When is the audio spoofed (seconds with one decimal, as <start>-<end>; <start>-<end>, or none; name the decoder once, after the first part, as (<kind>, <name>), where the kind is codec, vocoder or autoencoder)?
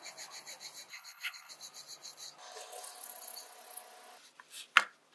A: 0.9-1.5 (codec, HILCodec)